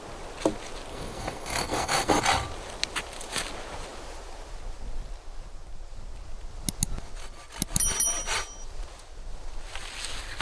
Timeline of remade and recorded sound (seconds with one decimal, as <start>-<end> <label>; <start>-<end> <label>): 0.0-0.9 recorded; 0.9-2.2 remade; 2.2-10.4 recorded